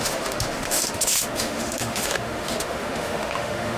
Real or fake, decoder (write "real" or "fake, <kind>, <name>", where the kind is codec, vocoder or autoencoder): fake, autoencoder, DAC-VAE